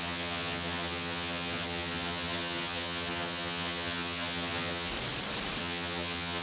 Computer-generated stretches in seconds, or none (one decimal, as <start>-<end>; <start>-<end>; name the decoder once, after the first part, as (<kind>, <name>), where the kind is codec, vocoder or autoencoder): 0.0-4.9 (vocoder, HiFi-GAN); 5.6-6.4